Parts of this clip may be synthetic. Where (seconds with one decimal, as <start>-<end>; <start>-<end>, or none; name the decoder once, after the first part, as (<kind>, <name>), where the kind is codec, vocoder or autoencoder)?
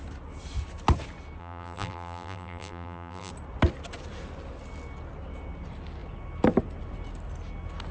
1.4-3.3 (vocoder, BigVGAN v2)